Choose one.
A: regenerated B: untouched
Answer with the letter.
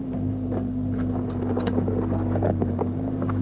A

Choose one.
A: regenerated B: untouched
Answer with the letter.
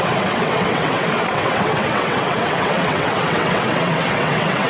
A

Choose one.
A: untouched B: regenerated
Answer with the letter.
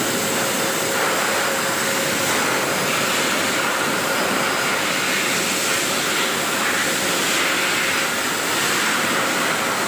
A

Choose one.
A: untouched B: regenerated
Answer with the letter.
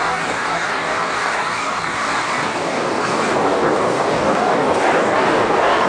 B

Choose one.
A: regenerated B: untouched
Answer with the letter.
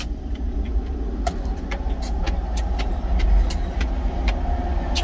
B